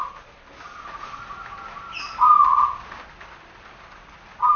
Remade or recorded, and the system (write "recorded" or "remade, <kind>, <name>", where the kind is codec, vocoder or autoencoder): recorded